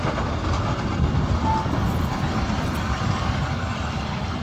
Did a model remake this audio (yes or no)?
no